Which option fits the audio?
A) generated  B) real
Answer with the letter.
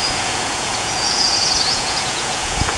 A